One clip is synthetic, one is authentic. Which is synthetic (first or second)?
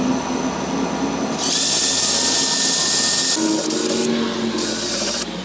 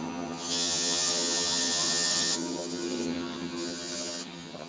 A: second